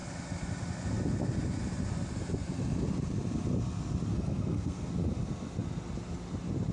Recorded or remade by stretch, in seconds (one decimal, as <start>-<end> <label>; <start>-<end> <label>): 0.0-4.1 recorded; 4.1-4.9 remade; 4.9-6.7 recorded